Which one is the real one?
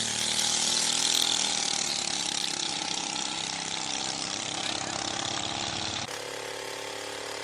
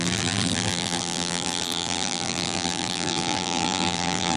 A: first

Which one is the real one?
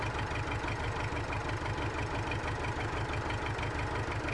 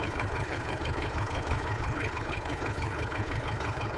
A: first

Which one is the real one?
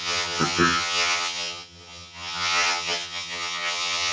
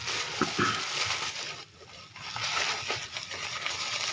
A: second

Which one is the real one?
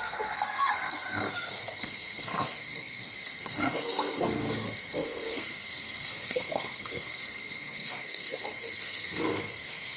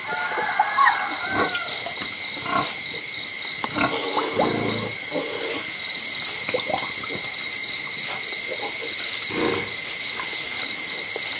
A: second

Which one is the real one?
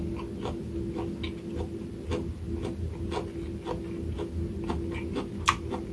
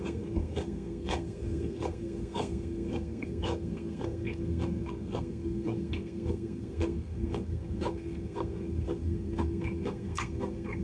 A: first